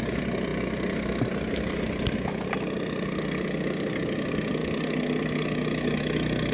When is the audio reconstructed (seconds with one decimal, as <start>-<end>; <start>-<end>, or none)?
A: none